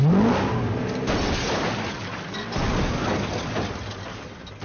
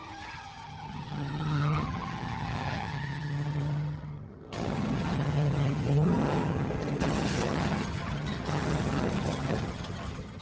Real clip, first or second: first